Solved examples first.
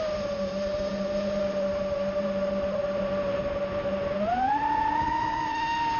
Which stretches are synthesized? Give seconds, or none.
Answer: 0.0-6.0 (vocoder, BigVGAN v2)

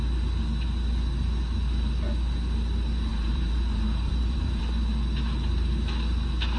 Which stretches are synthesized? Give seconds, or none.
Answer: 3.1-4.6 (vocoder, BigVGAN v2)

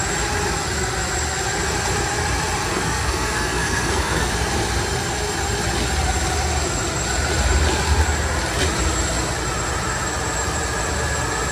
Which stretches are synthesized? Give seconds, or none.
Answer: 2.7-4.3 (codec, SNAC)

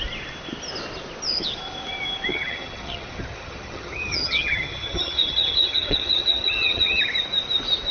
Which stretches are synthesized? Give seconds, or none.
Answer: 2.3-7.0 (vocoder, HiFi-GAN)

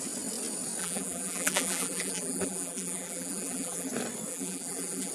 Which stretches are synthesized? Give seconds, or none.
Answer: 0.8-3.9 (vocoder, BigVGAN v2); 4.3-5.1

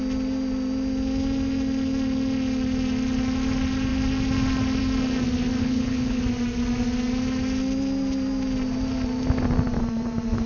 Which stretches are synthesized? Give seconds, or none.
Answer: 5.6-6.2 (codec, HILCodec)

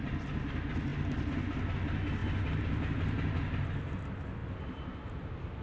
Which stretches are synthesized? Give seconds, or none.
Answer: none

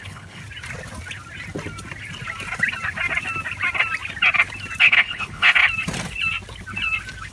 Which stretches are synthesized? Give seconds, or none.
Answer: 0.0-0.4 (codec, HILCodec); 4.8-5.6